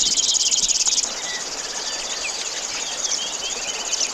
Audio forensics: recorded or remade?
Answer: recorded